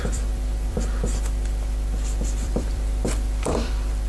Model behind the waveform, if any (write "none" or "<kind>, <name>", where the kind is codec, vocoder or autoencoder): vocoder, BigVGAN v2